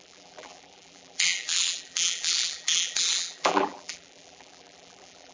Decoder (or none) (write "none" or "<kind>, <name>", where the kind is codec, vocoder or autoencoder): vocoder, BigVGAN v2